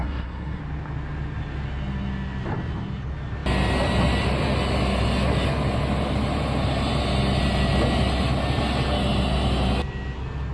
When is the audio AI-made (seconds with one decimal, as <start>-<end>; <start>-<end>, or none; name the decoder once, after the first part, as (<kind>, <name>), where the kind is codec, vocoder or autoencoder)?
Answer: 0.0-0.6 (codec, SNAC)